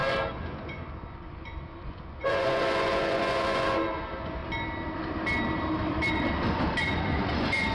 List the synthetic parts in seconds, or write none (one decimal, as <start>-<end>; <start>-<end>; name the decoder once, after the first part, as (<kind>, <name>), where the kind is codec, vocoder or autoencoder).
0.0-4.4 (vocoder, Vocos); 6.8-7.7